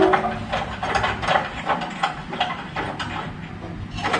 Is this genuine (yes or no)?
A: yes